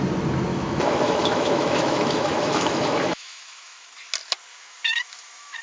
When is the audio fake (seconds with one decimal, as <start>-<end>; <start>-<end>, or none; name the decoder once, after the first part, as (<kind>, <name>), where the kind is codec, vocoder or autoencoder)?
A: 0.5-3.9 (autoencoder, DAC-VAE); 4.5-5.6